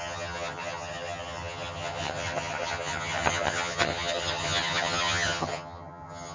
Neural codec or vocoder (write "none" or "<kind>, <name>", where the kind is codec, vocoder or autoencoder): vocoder, HiFi-GAN